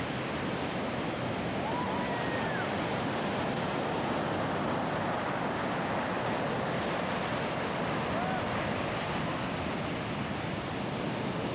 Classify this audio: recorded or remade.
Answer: recorded